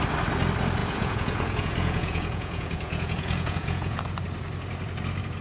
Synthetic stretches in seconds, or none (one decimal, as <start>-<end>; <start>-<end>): 0.8-4.0